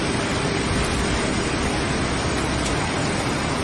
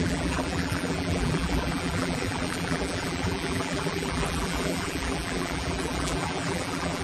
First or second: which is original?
first